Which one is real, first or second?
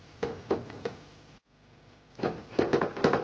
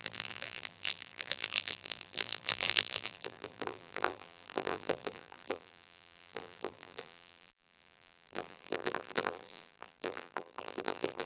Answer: first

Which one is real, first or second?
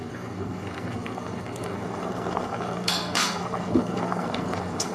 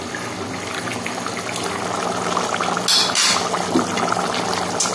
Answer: second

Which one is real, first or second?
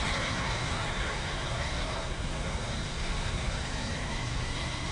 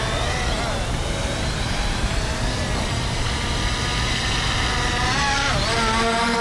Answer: second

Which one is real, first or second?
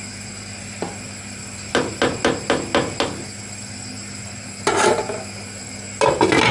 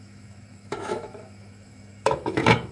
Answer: first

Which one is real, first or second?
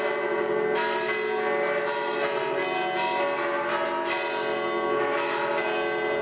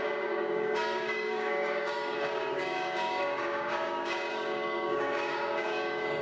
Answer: first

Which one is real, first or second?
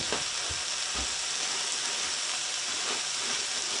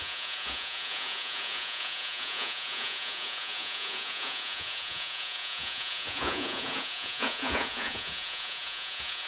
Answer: first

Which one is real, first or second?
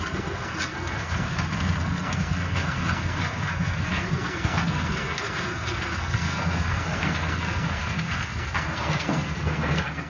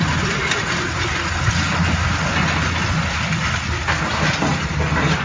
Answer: second